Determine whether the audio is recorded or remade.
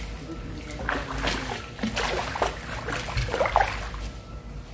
recorded